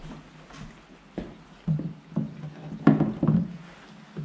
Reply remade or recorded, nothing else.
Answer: recorded